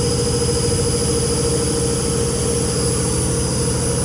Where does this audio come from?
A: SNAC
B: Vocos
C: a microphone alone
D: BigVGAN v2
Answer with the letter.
C